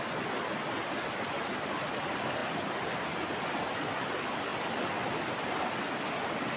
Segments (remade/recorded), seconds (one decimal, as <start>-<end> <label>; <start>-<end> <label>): 0.0-6.6 recorded